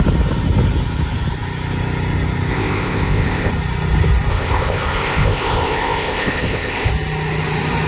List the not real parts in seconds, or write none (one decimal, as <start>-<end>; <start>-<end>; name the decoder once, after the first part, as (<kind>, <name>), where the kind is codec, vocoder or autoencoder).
2.5-3.5 (codec, ZipCodec); 4.3-6.9